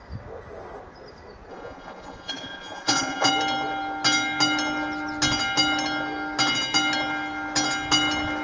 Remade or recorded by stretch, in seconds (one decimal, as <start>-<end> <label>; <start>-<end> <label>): 0.0-1.5 recorded; 1.5-3.3 remade; 3.3-8.4 recorded